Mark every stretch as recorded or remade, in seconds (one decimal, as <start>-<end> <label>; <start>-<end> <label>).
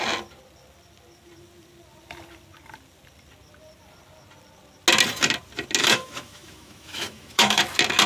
0.0-5.8 recorded; 5.8-7.6 remade; 7.6-8.1 recorded